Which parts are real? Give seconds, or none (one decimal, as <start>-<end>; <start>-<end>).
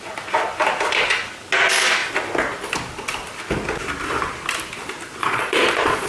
0.0-5.2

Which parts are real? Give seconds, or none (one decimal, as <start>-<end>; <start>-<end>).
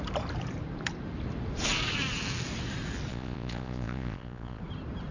0.0-3.1; 4.6-5.1